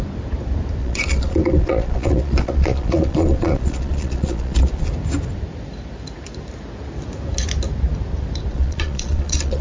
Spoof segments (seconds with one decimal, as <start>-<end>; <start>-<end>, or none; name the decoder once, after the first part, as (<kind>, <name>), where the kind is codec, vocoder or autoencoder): 0.8-4.9 (vocoder, Vocos); 8.5-9.6